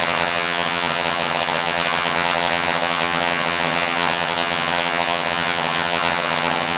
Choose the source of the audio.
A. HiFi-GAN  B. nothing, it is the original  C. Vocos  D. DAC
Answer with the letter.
A